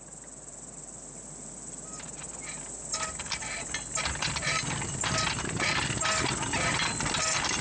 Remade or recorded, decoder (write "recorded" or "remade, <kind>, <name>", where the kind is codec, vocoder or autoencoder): recorded